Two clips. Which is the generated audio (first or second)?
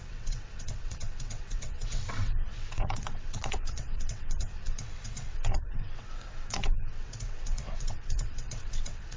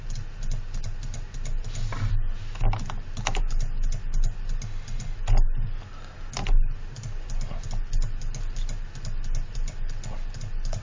first